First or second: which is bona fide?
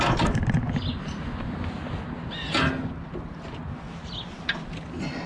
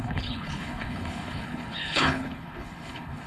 first